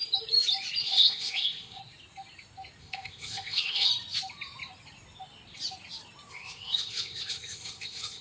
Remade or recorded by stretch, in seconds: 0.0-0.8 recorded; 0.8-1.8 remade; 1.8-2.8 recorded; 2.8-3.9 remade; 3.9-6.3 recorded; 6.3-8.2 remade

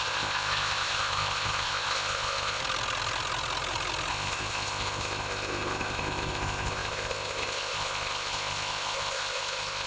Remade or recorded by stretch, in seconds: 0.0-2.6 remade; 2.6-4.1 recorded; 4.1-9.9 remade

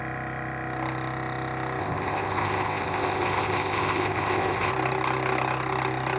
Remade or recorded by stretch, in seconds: 0.0-1.8 recorded; 1.8-4.7 remade; 4.7-6.2 recorded

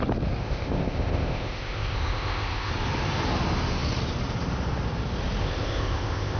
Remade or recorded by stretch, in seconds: 0.0-0.4 recorded; 0.4-2.7 remade; 2.7-5.4 recorded; 5.4-6.4 remade

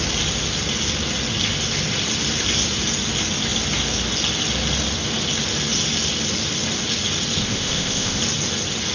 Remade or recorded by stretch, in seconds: 0.0-7.4 recorded; 7.4-8.2 remade; 8.2-8.9 recorded

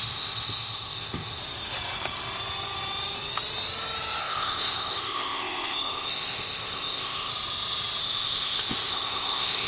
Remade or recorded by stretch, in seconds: 0.0-1.4 remade; 1.4-4.2 recorded; 4.2-7.3 remade; 7.3-8.0 recorded; 8.0-9.7 remade